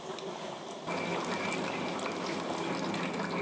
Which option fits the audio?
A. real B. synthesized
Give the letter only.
A